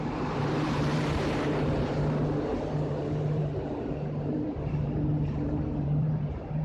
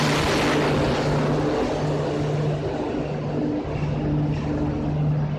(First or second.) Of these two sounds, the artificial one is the first